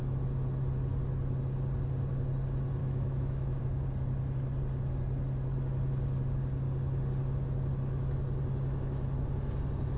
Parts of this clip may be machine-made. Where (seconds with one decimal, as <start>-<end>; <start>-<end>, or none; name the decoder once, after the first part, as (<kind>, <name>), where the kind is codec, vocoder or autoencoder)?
2.8-3.6 (autoencoder, DAC-VAE)